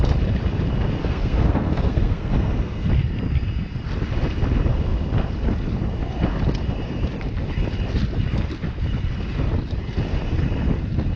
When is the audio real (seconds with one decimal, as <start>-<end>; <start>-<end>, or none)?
0.0-1.0; 2.9-11.2